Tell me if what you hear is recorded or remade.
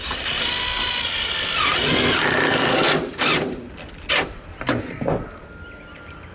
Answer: recorded